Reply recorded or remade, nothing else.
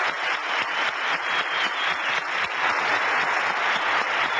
recorded